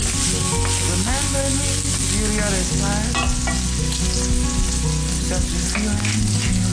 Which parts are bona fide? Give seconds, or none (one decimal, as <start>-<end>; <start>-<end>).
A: 0.0-6.7